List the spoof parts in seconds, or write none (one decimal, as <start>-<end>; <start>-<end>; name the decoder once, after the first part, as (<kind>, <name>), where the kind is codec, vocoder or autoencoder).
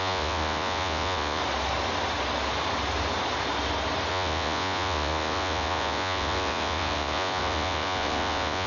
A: 0.0-1.4 (vocoder, Vocos); 4.1-8.7